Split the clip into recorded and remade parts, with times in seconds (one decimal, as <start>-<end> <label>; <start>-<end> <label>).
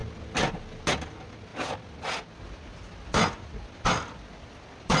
0.0-5.0 recorded